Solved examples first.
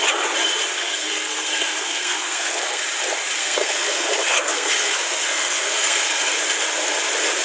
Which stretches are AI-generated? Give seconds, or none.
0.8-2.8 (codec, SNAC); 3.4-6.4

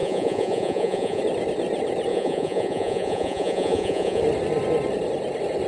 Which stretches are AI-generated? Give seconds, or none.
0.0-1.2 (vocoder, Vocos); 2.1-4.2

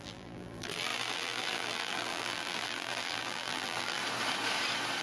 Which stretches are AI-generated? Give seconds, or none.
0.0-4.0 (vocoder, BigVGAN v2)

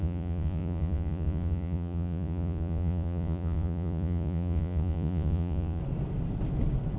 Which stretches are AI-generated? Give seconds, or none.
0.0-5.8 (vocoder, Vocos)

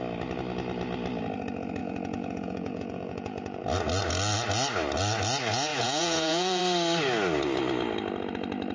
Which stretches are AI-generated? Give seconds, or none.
1.8-3.6 (vocoder, Vocos); 5.7-6.6